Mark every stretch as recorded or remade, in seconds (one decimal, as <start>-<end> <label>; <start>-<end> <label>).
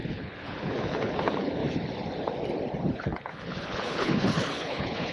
0.0-1.6 remade; 1.6-2.9 recorded; 2.9-5.1 remade